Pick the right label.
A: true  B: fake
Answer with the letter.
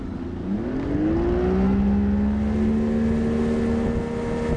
A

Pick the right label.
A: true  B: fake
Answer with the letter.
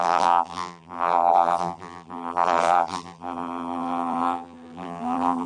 B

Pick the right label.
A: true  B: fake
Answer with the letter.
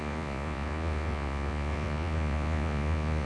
B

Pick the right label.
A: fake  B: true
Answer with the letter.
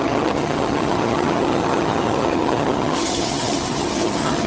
A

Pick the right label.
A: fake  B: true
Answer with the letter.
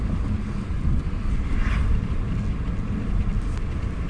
B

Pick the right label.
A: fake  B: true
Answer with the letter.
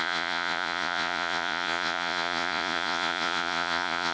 A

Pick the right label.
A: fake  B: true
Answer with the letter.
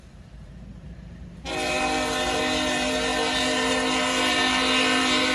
A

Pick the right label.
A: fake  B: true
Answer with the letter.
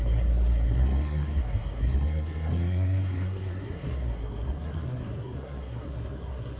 A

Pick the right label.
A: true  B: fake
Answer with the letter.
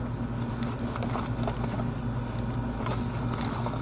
A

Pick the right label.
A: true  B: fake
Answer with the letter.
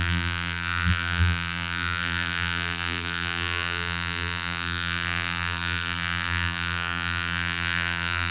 B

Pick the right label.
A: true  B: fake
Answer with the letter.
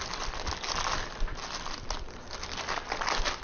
A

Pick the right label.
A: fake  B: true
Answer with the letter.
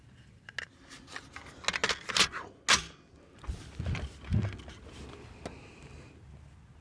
B